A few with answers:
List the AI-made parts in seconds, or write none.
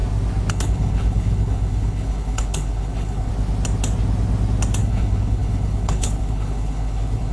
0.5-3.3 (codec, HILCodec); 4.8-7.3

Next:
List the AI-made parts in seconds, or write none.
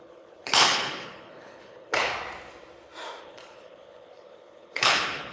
0.0-2.1 (codec, HILCodec); 3.2-5.3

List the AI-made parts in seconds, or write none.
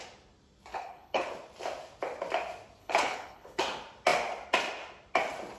0.7-1.3 (codec, HILCodec); 2.8-3.6